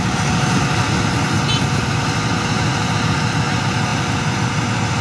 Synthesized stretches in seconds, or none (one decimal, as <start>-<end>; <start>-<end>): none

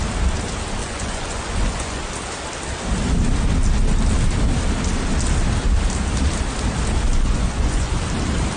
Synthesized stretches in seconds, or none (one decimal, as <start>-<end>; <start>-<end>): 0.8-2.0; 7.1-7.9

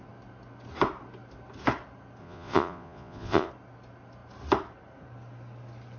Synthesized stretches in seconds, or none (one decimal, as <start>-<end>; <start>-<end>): 2.2-3.5